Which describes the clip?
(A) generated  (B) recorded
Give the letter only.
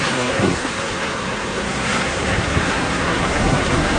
A